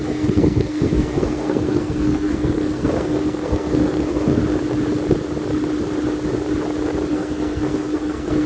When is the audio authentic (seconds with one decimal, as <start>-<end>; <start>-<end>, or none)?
4.4-7.1